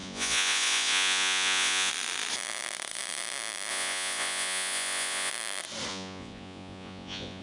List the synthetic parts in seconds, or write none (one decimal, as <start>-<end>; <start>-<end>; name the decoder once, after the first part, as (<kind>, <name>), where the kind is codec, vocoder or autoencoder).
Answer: 0.0-1.9 (vocoder, Vocos); 3.7-5.3; 5.9-7.4